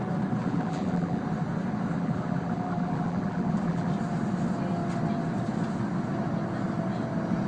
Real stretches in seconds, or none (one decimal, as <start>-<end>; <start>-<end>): 0.0-0.4; 1.2-1.9; 3.9-7.5